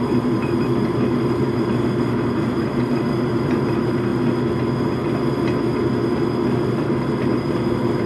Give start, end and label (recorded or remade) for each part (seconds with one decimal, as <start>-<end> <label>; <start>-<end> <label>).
0.0-4.1 remade; 4.1-6.6 recorded; 6.6-8.1 remade